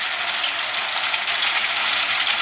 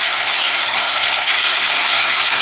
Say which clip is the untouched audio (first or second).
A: first